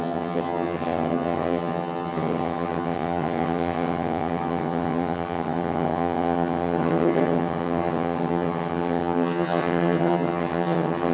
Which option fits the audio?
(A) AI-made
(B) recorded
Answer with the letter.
A